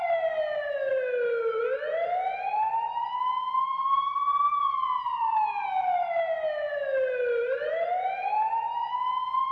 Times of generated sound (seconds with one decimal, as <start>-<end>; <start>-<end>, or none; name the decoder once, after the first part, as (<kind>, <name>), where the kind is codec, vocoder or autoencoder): none